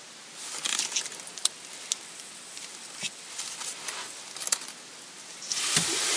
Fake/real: real